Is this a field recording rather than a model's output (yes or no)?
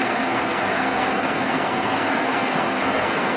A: no